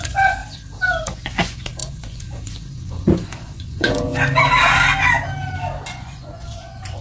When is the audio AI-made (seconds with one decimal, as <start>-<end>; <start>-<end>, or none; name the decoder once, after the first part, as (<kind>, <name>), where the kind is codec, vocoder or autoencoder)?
0.0-0.4 (vocoder, Vocos); 1.0-4.1; 5.9-7.0